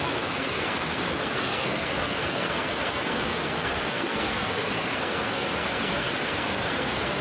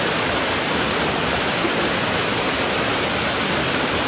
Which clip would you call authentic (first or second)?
second